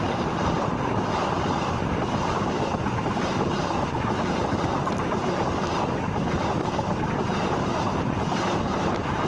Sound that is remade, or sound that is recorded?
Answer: recorded